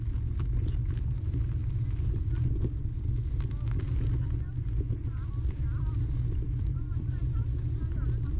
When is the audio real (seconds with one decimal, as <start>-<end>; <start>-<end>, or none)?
0.0-8.4